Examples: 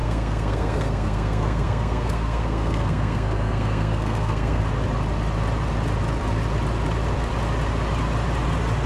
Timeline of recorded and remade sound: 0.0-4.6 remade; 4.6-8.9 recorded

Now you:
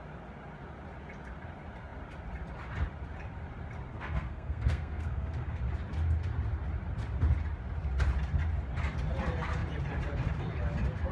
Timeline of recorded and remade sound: 0.0-3.9 recorded; 3.9-5.6 remade; 5.6-11.1 recorded

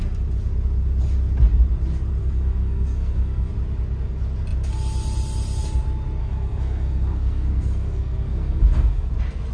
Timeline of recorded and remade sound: 0.0-2.2 recorded; 2.2-3.5 remade; 3.5-6.2 recorded; 6.2-9.1 remade; 9.1-9.5 recorded